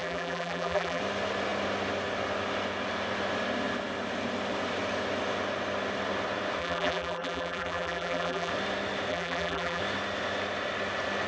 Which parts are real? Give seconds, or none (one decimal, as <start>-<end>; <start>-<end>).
1.0-6.6; 8.5-9.1; 9.8-11.3